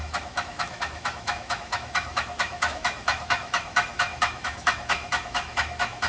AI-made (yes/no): yes